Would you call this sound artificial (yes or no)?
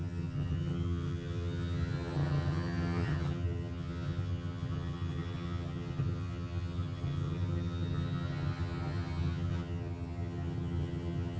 yes